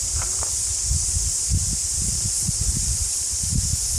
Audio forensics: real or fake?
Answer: fake